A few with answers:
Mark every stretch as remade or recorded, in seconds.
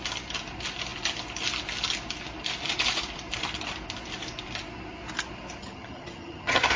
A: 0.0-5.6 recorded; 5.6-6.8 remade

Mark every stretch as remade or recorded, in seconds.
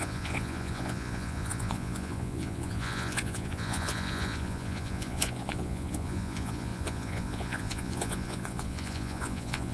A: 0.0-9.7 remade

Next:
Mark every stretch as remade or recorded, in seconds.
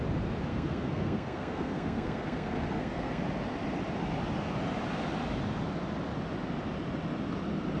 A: 0.0-0.5 recorded; 0.5-3.2 remade; 3.2-7.8 recorded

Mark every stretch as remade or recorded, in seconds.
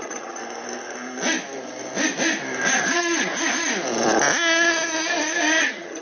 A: 0.0-0.4 remade; 0.4-2.8 recorded; 2.8-3.3 remade; 3.3-5.6 recorded; 5.6-6.0 remade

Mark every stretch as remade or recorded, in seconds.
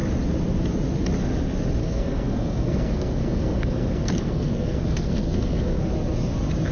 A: 0.0-1.8 recorded; 1.8-5.8 remade; 5.8-6.7 recorded